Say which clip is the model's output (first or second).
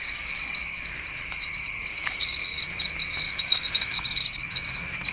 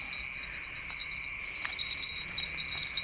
first